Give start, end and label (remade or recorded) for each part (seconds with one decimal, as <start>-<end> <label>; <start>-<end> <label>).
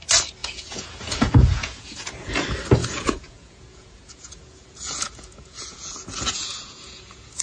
0.0-0.4 recorded; 0.4-2.4 remade; 2.4-2.8 recorded; 2.8-7.4 remade